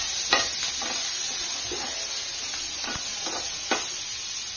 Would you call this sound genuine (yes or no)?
yes